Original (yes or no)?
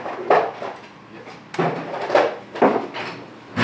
yes